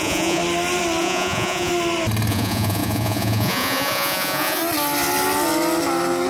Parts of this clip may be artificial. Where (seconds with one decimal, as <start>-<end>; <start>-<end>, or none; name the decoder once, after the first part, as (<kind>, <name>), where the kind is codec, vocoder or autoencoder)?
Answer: 0.0-0.4 (vocoder, Vocos); 1.0-1.7; 2.3-4.6